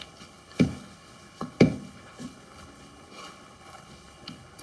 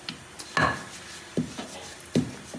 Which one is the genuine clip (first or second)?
second